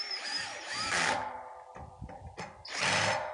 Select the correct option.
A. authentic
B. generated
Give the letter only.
A